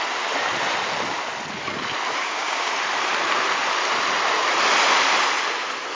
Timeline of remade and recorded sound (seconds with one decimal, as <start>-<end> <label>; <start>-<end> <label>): 0.0-2.2 recorded; 2.2-2.7 remade; 2.7-5.9 recorded

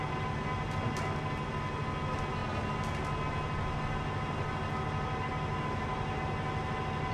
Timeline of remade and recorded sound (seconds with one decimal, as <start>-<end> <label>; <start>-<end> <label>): 0.0-7.1 recorded